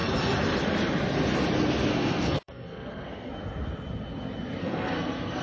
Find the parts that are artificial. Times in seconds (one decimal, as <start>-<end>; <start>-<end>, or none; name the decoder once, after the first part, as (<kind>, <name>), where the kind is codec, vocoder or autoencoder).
1.9-3.3 (codec, SNAC); 4.6-5.4